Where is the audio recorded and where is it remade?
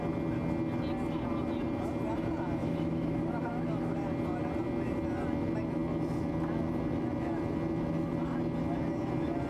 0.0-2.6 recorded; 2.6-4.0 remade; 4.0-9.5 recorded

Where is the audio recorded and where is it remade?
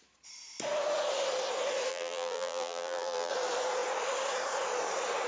0.0-1.9 recorded; 1.9-3.3 remade; 3.3-5.3 recorded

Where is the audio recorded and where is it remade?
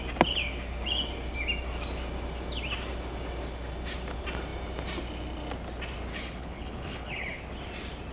0.0-6.1 recorded; 6.1-7.4 remade; 7.4-8.1 recorded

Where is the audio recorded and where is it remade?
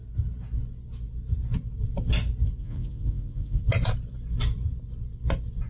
0.0-2.6 recorded; 2.6-3.6 remade; 3.6-5.7 recorded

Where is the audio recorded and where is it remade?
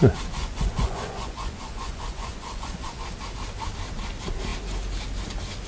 0.0-0.4 recorded; 0.4-3.1 remade; 3.1-5.7 recorded